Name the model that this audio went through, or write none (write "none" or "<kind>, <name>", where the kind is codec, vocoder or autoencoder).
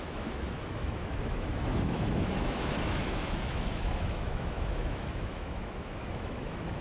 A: autoencoder, DAC-VAE